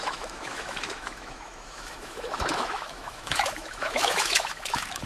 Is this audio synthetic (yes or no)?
yes